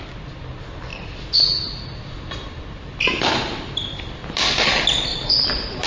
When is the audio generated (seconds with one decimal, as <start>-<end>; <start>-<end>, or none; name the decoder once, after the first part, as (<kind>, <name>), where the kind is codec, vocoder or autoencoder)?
none

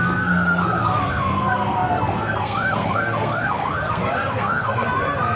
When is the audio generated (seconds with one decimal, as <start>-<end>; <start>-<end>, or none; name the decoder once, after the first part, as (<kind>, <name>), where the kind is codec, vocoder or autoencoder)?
0.0-5.4 (codec, SNAC)

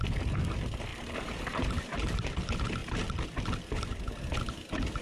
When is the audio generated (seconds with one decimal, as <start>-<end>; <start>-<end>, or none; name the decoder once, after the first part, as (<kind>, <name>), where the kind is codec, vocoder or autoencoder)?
0.9-2.4 (vocoder, BigVGAN v2)

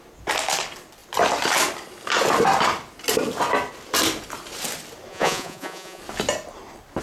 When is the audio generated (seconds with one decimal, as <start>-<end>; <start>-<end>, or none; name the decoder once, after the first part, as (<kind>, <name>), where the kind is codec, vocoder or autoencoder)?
5.1-6.0 (vocoder, Vocos)

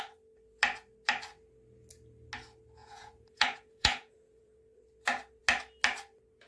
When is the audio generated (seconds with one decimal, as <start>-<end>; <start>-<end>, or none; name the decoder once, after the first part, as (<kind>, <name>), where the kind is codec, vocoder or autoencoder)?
2.8-4.6 (vocoder, Vocos)